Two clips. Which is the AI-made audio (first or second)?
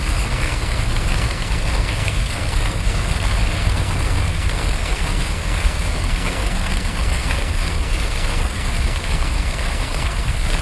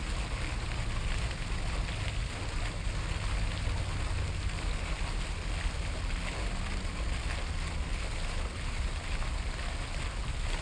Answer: first